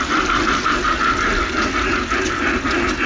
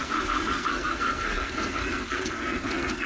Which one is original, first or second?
first